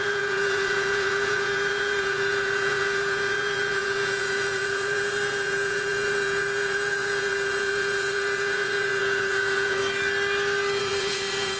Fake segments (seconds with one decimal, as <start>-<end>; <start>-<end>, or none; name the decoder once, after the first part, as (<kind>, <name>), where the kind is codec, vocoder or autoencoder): 0.0-9.8 (vocoder, Vocos); 10.8-11.6